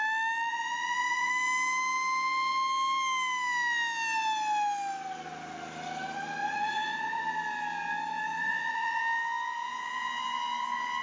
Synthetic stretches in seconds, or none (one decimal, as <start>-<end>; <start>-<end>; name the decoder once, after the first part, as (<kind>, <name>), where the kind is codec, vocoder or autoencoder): 0.5-1.3 (vocoder, Vocos); 6.4-7.2; 8.3-9.0